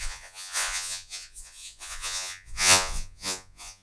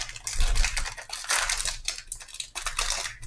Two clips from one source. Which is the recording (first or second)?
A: second